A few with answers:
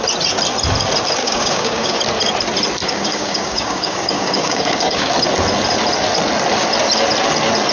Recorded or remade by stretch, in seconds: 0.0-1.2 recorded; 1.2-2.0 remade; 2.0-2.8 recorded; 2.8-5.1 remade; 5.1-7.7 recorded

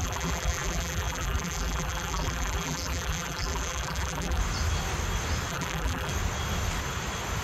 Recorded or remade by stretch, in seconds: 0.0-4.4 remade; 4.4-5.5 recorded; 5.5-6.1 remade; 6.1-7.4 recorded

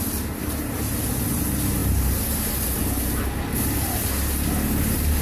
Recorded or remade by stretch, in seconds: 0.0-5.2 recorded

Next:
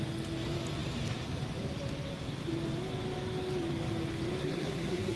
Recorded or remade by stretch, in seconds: 0.0-4.4 recorded; 4.4-5.2 remade

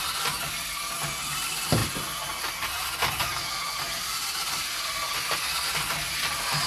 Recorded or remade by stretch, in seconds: 0.0-6.7 recorded

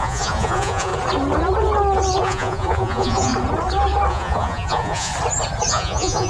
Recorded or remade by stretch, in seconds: 0.0-0.9 remade; 0.9-2.2 recorded; 2.2-3.3 remade; 3.3-4.1 recorded; 4.1-5.1 remade; 5.1-5.7 recorded; 5.7-6.3 remade

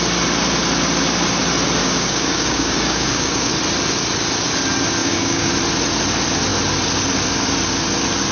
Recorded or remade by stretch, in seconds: 0.0-1.8 recorded; 1.8-3.5 remade; 3.5-5.0 recorded; 5.0-5.5 remade; 5.5-8.3 recorded